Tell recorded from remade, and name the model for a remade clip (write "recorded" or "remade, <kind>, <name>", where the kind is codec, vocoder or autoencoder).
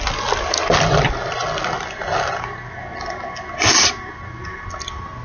recorded